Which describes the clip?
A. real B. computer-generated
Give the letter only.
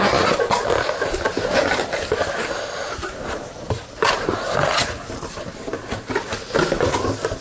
A